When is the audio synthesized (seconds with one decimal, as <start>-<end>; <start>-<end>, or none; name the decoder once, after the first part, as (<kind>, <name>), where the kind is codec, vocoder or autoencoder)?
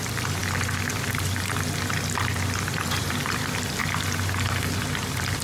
0.0-0.4 (vocoder, BigVGAN v2); 3.0-3.8; 4.8-5.4